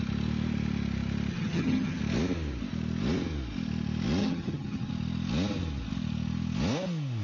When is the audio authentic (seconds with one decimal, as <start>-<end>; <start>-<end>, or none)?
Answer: 0.0-1.3; 2.0-4.2; 4.9-7.2